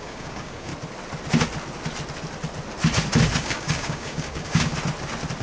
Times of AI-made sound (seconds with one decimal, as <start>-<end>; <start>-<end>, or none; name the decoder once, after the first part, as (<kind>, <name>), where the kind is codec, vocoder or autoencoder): 0.0-0.7 (codec, DAC); 3.4-4.7